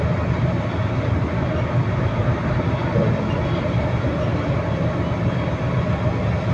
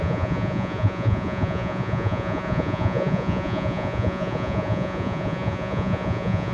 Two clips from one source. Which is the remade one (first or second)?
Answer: second